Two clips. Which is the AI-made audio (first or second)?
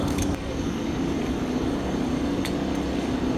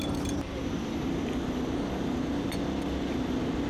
first